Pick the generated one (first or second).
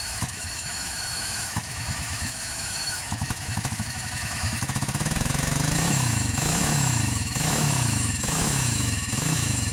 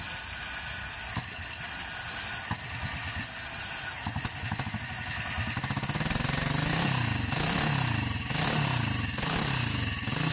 first